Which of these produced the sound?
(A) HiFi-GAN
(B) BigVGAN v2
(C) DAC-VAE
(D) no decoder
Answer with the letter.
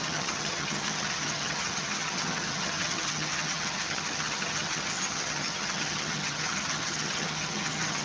A